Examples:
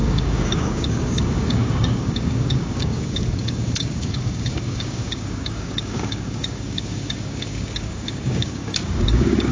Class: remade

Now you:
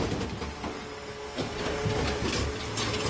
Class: recorded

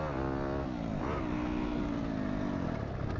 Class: recorded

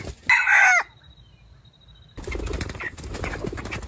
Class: recorded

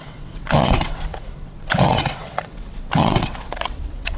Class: remade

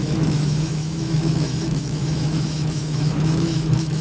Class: remade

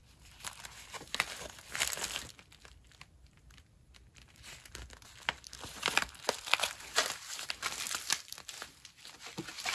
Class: remade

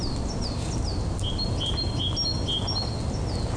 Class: recorded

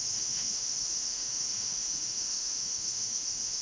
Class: remade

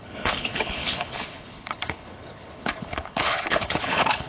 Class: remade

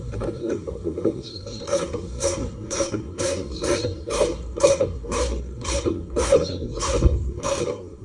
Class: remade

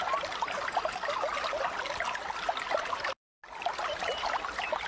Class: recorded